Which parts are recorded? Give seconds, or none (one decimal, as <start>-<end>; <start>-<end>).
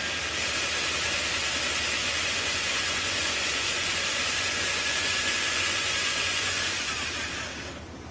0.0-2.0; 6.9-8.1